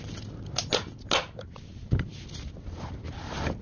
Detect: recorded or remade recorded